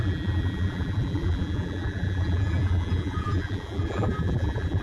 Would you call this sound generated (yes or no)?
yes